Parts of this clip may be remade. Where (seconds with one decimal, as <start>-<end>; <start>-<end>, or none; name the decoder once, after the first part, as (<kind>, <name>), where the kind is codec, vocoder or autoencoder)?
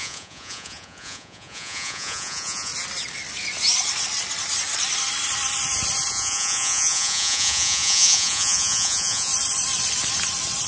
0.0-2.7 (vocoder, Vocos); 6.1-9.3